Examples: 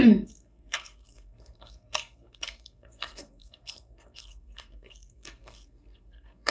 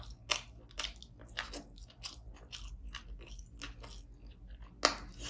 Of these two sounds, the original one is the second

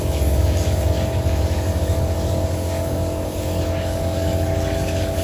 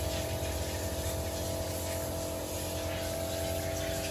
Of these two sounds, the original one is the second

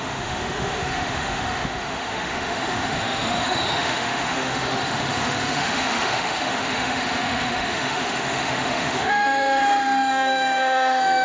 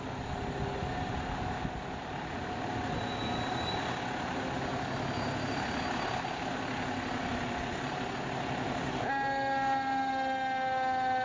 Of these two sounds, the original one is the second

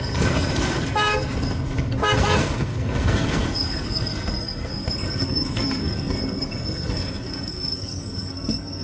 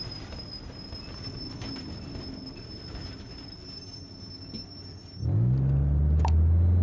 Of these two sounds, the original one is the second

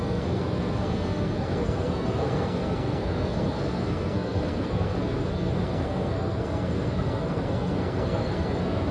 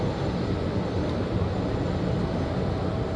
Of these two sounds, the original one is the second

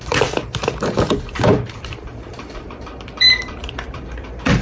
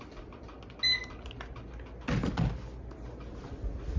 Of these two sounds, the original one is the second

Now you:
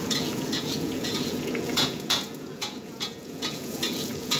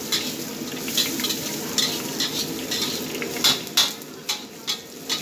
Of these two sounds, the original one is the second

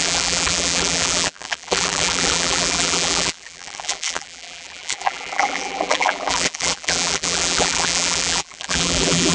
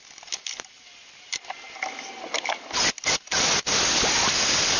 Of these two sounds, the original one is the second